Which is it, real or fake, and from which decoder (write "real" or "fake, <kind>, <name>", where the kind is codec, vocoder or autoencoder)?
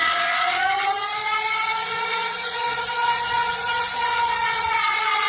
fake, vocoder, Vocos